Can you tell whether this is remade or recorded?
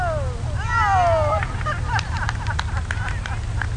recorded